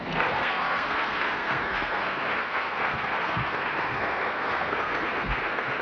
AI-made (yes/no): yes